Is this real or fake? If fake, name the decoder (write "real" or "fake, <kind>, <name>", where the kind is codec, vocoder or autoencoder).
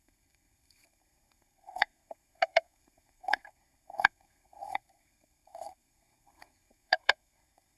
fake, codec, SNAC